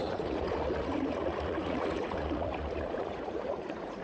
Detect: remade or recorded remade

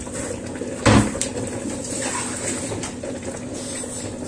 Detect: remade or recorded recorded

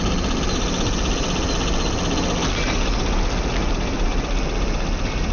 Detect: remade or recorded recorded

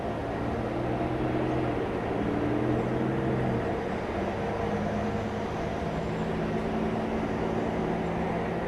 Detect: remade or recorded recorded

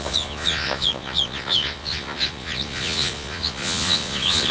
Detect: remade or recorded remade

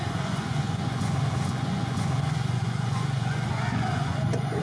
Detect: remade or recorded remade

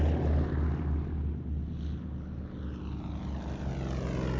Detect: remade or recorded recorded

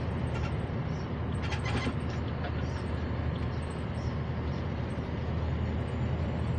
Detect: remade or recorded recorded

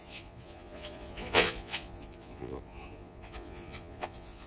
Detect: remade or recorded remade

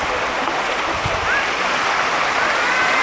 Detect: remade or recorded recorded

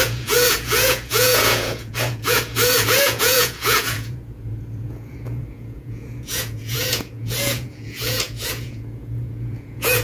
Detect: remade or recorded remade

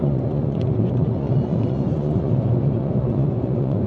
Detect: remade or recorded remade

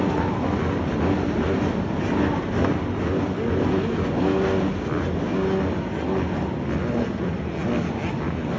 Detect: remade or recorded recorded